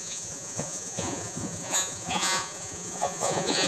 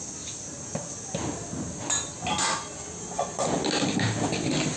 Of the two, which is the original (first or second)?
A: second